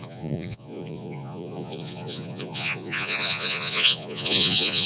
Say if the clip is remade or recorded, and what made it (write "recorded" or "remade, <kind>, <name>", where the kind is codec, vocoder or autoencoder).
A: remade, vocoder, Vocos